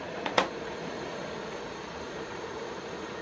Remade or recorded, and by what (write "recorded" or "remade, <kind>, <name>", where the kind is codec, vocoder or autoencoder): remade, vocoder, Vocos